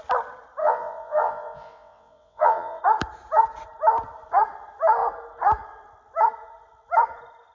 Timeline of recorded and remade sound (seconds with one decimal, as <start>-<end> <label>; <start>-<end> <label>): 0.0-0.6 recorded; 0.6-2.8 remade; 2.8-7.5 recorded